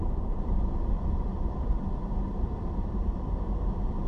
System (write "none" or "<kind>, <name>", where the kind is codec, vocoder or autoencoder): vocoder, BigVGAN v2